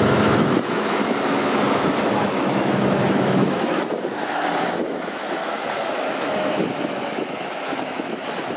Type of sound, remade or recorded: remade